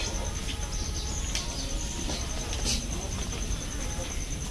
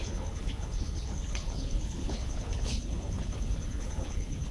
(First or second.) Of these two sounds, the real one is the first